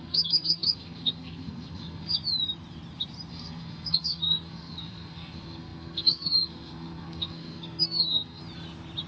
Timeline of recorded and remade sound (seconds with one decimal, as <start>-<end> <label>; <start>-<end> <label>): 0.0-2.2 remade; 2.2-3.3 recorded; 3.3-8.4 remade; 8.4-9.1 recorded